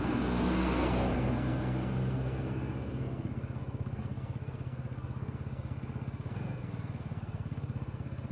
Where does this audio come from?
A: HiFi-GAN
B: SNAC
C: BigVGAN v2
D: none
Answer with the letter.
B